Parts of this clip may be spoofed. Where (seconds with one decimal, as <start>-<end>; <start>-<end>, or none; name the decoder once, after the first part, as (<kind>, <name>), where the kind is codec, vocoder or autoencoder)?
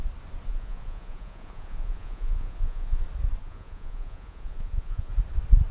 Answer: 0.5-3.0 (vocoder, Vocos); 3.4-5.1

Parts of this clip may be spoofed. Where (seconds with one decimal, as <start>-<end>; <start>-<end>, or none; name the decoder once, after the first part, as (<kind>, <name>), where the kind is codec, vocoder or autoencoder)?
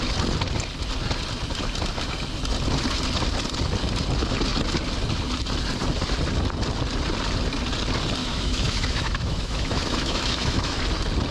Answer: 8.2-10.8 (autoencoder, DAC-VAE)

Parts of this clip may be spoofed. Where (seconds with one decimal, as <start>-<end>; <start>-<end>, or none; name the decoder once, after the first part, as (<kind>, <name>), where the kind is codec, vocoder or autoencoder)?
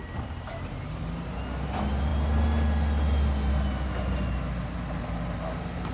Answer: none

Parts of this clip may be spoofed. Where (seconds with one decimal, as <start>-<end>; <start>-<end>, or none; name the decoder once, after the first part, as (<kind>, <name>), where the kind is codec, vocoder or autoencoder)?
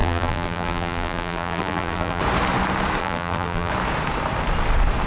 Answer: 0.0-2.2 (vocoder, BigVGAN v2); 3.0-3.7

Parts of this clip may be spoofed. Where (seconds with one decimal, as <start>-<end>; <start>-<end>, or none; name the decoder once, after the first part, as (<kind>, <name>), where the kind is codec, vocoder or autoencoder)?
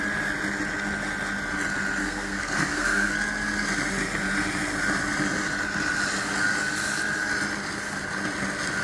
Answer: 2.0-3.1 (codec, SNAC)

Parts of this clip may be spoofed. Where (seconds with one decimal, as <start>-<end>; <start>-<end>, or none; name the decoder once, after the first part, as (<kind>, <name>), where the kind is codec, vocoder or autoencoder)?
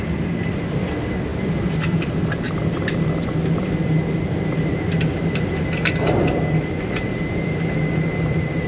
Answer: none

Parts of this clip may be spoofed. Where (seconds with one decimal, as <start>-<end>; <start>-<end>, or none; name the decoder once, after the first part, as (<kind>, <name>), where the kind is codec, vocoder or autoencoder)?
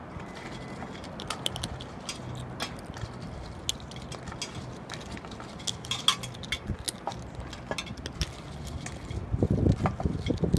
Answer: none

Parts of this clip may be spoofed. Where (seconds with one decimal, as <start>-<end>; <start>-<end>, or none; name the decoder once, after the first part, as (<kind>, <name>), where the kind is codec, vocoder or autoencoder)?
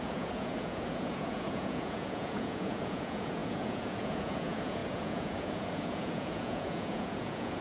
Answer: 0.0-7.6 (vocoder, Vocos)